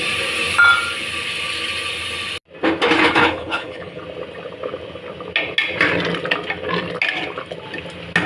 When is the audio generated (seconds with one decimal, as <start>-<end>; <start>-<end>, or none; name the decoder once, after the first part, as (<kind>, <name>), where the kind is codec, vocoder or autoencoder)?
3.0-4.0 (codec, HILCodec)